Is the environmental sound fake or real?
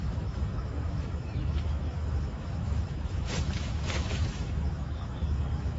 fake